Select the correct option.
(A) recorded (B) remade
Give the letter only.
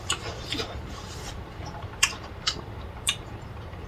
B